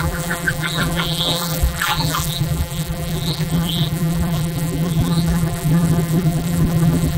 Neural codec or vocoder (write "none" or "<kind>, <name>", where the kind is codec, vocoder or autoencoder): vocoder, BigVGAN v2